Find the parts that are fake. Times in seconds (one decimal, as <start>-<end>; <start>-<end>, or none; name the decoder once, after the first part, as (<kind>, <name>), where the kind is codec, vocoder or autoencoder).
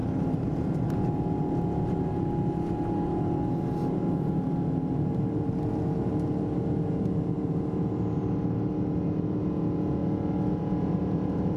0.0-0.9 (vocoder, BigVGAN v2)